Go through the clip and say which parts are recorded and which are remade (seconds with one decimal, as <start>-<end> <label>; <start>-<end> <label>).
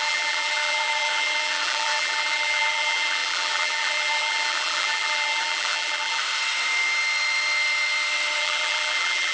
0.0-6.2 remade; 6.2-8.4 recorded; 8.4-9.3 remade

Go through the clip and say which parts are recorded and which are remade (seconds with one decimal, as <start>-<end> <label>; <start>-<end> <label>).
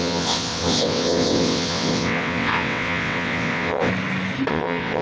0.0-3.9 remade; 3.9-4.5 recorded; 4.5-5.0 remade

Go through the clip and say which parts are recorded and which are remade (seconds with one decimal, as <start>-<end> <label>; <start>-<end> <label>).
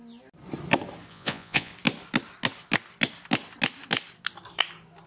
0.0-1.1 recorded; 1.1-1.7 remade; 1.7-5.1 recorded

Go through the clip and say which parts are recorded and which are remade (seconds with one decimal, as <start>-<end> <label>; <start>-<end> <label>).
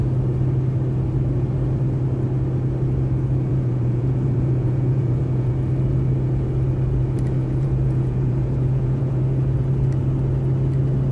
0.0-3.5 recorded; 3.5-5.5 remade; 5.5-7.4 recorded; 7.4-9.2 remade; 9.2-11.1 recorded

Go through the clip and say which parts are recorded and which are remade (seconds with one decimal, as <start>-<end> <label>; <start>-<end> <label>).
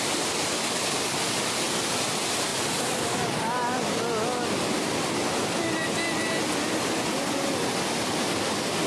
0.0-8.9 recorded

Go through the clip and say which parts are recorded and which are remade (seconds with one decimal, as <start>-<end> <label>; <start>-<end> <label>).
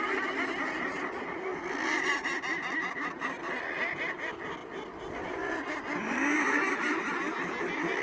0.0-8.0 recorded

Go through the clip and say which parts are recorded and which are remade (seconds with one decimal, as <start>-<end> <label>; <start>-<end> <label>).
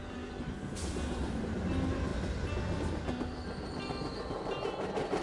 0.0-5.2 recorded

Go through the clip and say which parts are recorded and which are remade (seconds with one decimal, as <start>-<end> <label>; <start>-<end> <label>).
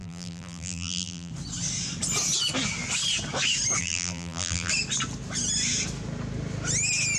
0.0-1.3 remade; 1.3-3.8 recorded; 3.8-4.7 remade; 4.7-7.2 recorded